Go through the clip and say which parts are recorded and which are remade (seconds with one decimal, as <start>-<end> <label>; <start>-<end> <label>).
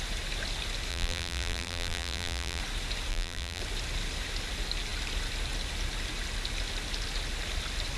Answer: 0.0-0.9 recorded; 0.9-2.6 remade; 2.6-3.1 recorded; 3.1-3.6 remade; 3.6-8.0 recorded